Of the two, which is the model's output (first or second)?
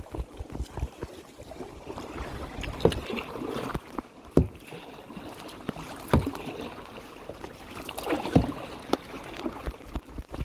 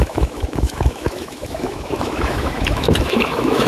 second